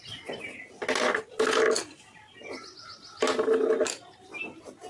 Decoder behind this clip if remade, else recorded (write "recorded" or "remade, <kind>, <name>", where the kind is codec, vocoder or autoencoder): recorded